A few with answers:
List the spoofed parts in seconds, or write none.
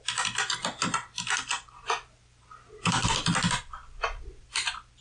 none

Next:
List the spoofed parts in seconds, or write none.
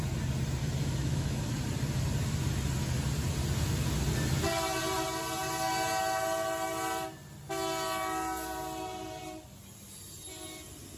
0.6-1.5 (autoencoder, DAC-VAE)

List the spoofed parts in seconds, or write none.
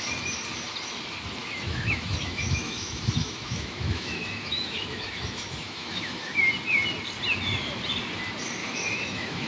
1.4-6.4 (autoencoder, DAC-VAE); 8.6-9.5